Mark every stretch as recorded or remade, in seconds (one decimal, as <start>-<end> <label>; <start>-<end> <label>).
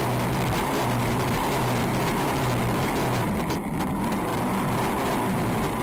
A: 0.0-5.8 recorded